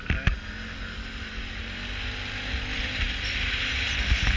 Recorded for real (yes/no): yes